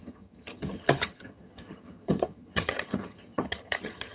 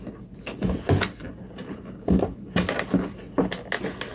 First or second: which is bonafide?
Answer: second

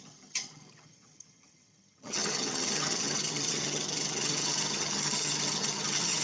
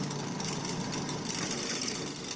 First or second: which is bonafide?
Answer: second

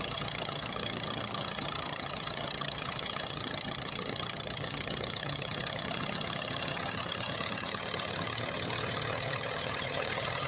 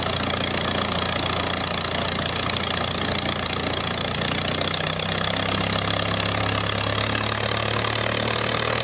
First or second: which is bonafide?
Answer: second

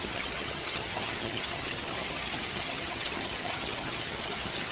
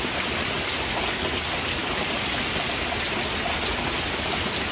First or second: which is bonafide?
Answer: second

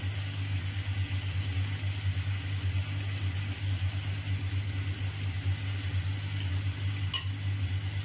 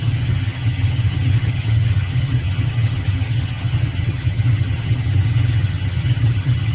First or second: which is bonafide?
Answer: first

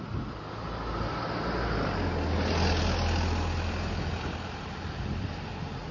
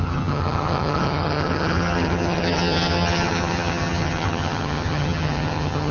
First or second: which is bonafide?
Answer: first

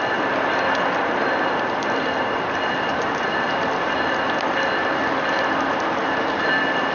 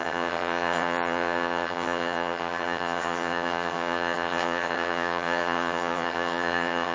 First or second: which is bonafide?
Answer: first